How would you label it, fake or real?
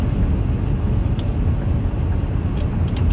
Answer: real